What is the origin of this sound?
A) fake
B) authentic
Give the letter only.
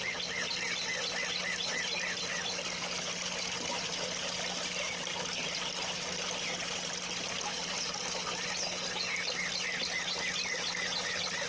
B